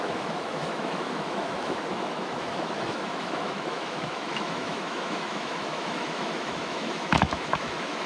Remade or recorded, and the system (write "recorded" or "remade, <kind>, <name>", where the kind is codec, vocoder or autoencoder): remade, autoencoder, DAC-VAE